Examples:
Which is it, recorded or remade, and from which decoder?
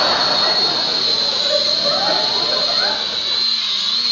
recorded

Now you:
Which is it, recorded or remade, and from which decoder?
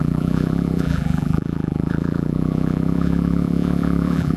remade, vocoder, BigVGAN v2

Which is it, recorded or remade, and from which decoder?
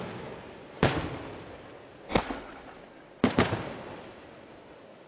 recorded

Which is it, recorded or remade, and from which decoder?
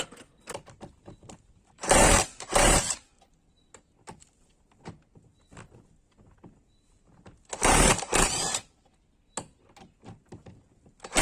recorded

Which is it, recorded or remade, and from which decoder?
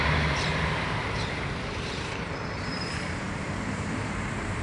remade, vocoder, BigVGAN v2